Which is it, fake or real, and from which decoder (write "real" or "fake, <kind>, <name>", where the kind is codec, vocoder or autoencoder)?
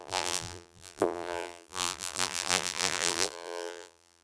fake, vocoder, BigVGAN v2